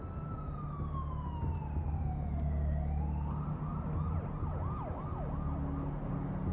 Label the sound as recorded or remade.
recorded